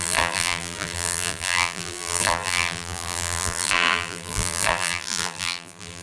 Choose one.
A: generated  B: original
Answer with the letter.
A